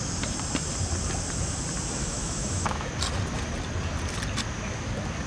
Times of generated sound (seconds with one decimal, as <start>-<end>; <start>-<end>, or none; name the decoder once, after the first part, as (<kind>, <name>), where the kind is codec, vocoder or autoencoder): 2.0-2.9 (autoencoder, DAC-VAE)